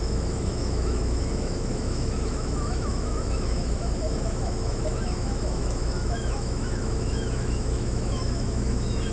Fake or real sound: fake